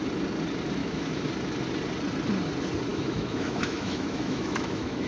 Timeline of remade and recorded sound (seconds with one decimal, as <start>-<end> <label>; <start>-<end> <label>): 0.0-0.8 recorded; 0.8-1.3 remade; 1.3-2.9 recorded; 2.9-5.1 remade

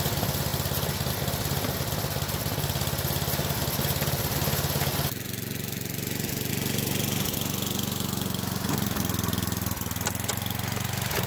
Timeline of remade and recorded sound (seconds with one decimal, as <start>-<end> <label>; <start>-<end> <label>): 0.0-11.3 recorded

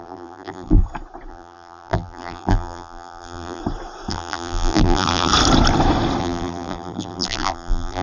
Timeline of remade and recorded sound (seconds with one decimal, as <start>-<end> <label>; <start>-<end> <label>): 0.0-0.8 remade; 0.8-1.3 recorded; 1.3-3.6 remade; 3.6-4.1 recorded; 4.1-5.3 remade; 5.3-6.2 recorded; 6.2-8.0 remade

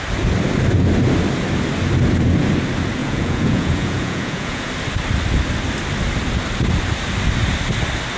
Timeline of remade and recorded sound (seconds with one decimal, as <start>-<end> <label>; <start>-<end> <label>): 0.0-3.0 recorded; 3.0-4.7 remade; 4.7-8.2 recorded